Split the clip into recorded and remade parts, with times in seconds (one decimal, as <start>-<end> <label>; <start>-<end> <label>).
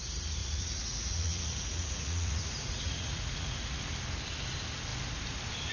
0.0-0.4 recorded; 0.4-3.8 remade; 3.8-5.7 recorded